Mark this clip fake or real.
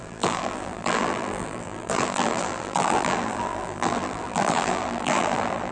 fake